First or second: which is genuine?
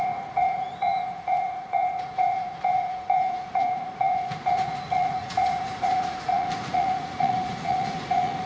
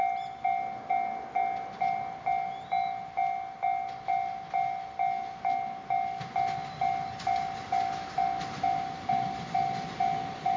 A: second